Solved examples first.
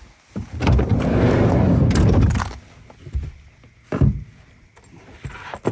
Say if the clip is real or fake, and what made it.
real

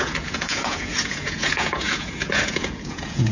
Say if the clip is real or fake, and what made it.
fake, vocoder, Vocos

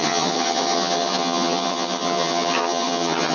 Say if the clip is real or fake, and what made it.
fake, vocoder, HiFi-GAN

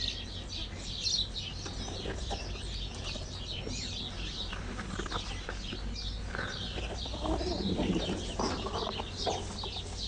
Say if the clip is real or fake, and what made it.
real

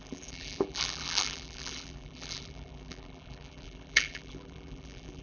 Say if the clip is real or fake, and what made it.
fake, vocoder, BigVGAN v2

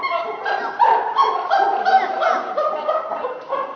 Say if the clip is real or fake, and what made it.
real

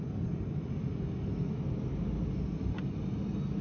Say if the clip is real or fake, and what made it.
real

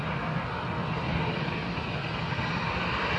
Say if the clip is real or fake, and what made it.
real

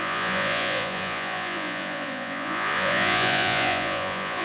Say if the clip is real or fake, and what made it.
fake, vocoder, Vocos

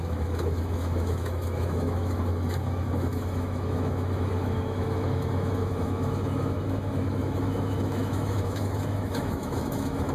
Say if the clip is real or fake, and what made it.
fake, autoencoder, DAC-VAE